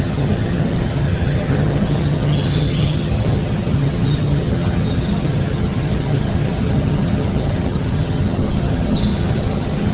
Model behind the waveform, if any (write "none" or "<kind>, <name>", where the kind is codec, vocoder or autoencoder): vocoder, HiFi-GAN